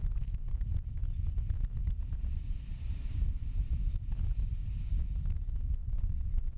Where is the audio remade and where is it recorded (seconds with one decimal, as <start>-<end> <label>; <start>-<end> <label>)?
0.0-5.8 recorded; 5.8-6.6 remade